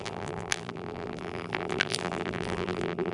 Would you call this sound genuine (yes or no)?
no